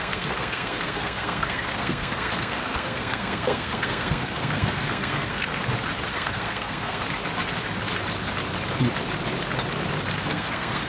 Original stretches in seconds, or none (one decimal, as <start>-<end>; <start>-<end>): 5.6-6.1; 7.0-10.3